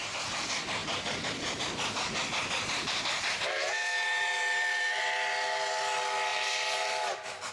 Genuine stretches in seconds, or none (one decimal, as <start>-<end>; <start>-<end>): 0.0-0.8; 5.0-6.3